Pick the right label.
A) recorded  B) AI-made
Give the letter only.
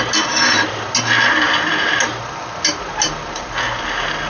A